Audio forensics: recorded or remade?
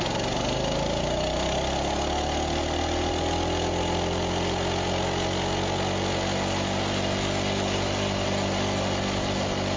recorded